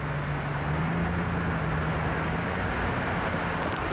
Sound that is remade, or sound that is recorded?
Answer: recorded